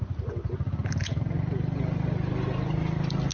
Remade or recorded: recorded